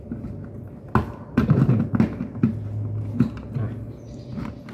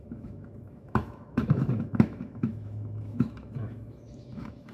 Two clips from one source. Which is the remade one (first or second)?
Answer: second